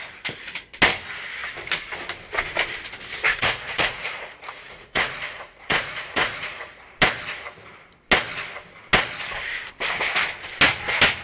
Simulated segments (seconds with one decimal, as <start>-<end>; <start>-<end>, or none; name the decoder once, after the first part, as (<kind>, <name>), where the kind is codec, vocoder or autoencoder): 3.3-6.8 (vocoder, Vocos)